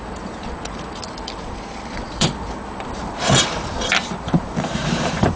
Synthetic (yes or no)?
yes